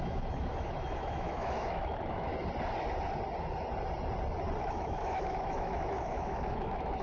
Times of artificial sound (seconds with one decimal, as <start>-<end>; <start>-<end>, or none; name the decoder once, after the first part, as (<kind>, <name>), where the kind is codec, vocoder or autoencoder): 0.0-2.3 (autoencoder, DAC-VAE); 4.6-7.0